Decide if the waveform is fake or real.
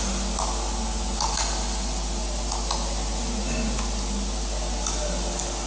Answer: real